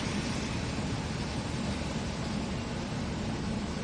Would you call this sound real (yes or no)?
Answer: yes